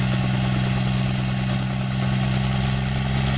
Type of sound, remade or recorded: recorded